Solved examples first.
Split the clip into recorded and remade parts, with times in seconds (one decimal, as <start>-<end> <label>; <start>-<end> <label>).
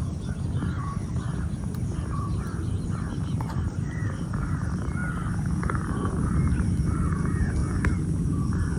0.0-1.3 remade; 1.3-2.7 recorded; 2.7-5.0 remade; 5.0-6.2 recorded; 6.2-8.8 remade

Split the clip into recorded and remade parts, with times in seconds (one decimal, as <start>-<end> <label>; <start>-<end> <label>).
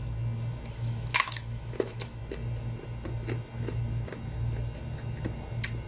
0.0-0.7 recorded; 0.7-2.2 remade; 2.2-5.9 recorded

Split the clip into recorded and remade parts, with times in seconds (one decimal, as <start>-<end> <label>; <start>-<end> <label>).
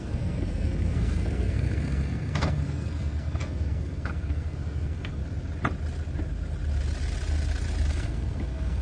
0.0-5.2 remade; 5.2-7.9 recorded; 7.9-8.8 remade